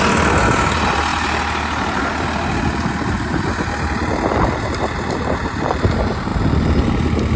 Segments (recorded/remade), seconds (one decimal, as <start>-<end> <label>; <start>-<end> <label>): 0.0-7.4 recorded